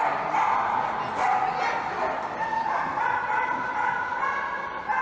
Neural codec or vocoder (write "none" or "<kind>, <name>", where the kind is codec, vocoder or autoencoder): none